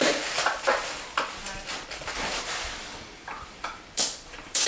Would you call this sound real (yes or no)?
no